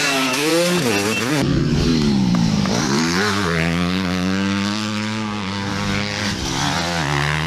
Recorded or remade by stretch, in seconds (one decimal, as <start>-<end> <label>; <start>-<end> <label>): 0.0-0.5 remade; 0.5-1.3 recorded; 1.3-2.3 remade; 2.3-2.8 recorded; 2.8-5.7 remade; 5.7-7.5 recorded